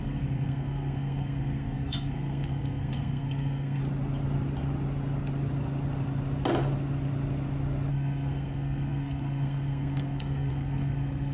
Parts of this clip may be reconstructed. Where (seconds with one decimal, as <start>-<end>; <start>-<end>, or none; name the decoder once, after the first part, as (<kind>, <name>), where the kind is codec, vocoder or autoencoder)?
0.0-3.8 (codec, SNAC); 7.9-11.3